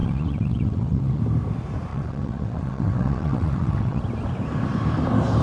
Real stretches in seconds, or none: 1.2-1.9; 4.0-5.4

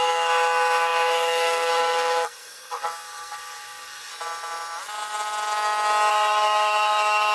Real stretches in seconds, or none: 4.1-6.1

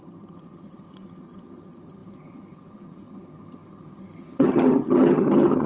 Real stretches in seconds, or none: none

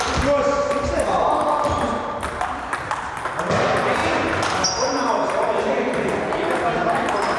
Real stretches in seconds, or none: 0.0-7.4